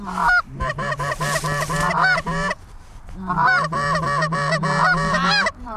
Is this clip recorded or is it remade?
remade